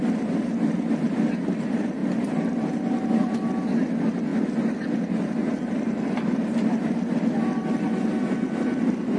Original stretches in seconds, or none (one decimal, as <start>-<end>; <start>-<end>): 0.0-9.2